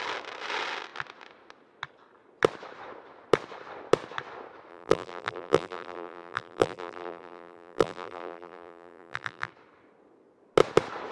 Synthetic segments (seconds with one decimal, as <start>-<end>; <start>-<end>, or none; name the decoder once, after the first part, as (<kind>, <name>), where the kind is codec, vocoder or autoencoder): 4.7-9.5 (vocoder, BigVGAN v2)

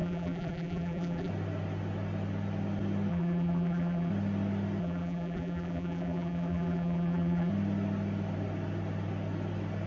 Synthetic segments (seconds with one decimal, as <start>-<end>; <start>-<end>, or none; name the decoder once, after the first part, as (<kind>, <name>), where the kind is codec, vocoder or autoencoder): 0.0-1.3 (vocoder, BigVGAN v2); 3.1-4.1; 4.8-7.5

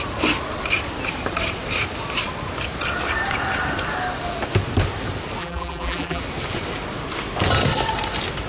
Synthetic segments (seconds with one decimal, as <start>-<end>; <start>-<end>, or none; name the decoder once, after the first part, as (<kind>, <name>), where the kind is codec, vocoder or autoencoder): 5.4-6.2 (vocoder, BigVGAN v2)

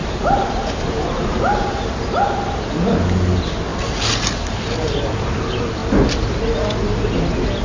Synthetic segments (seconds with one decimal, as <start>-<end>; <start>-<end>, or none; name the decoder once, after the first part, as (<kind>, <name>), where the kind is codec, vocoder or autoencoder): 0.0-2.1 (vocoder, BigVGAN v2)

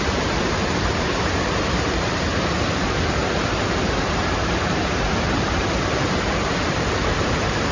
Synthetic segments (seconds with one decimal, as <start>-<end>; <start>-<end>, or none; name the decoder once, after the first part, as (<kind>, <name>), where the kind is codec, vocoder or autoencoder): 0.0-2.3 (vocoder, BigVGAN v2); 3.1-7.7

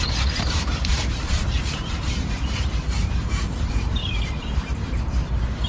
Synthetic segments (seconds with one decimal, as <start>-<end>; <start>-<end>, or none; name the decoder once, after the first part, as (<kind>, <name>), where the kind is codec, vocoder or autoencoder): 0.0-5.7 (vocoder, BigVGAN v2)

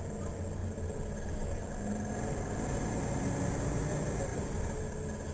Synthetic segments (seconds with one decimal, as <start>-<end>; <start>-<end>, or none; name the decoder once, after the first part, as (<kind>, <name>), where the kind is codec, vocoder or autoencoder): none